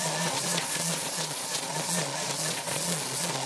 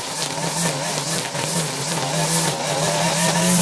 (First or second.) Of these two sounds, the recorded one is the second